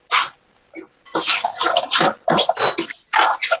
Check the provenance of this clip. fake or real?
real